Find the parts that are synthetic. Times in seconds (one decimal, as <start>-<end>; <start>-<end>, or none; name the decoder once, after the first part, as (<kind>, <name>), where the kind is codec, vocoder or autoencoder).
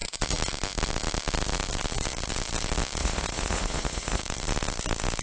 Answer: 3.0-4.2 (vocoder, Vocos)